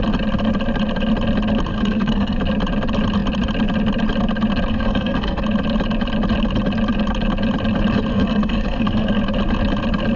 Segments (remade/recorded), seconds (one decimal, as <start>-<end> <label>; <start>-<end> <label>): 0.0-1.7 recorded; 1.7-2.4 remade; 2.4-4.7 recorded; 4.7-5.4 remade; 5.4-8.1 recorded; 8.1-9.2 remade; 9.2-10.2 recorded